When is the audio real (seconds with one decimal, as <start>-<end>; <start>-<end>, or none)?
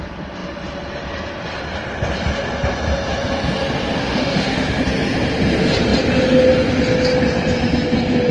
0.0-4.0; 4.8-8.3